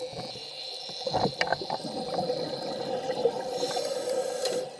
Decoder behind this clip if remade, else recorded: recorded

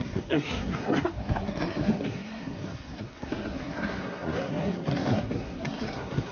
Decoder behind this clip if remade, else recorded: remade, codec, SNAC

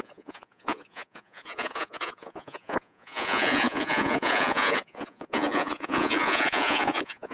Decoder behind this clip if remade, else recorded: remade, vocoder, Vocos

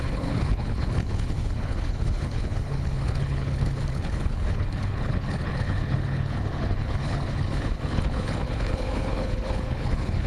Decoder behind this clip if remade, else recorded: remade, codec, HILCodec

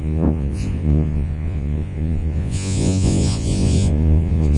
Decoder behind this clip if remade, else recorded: remade, vocoder, Vocos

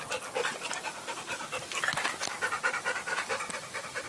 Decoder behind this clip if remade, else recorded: remade, vocoder, BigVGAN v2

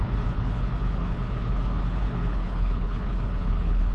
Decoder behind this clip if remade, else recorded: remade, codec, HILCodec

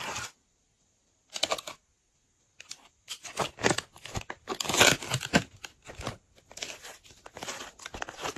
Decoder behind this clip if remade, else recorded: recorded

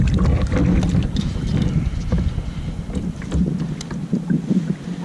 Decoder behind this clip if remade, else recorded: recorded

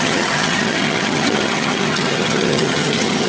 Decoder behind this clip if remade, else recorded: remade, vocoder, HiFi-GAN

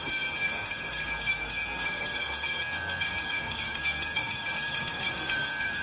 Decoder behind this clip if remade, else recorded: remade, codec, SNAC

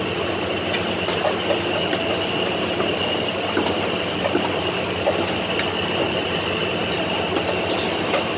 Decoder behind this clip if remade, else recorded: recorded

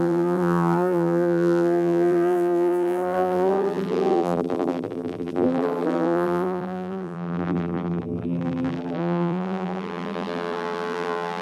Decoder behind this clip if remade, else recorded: remade, vocoder, BigVGAN v2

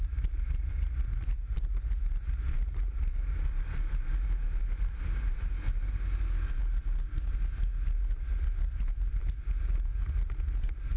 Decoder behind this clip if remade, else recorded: remade, vocoder, BigVGAN v2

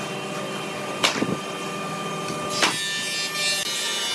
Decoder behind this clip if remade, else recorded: recorded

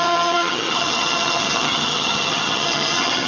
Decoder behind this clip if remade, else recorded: remade, vocoder, HiFi-GAN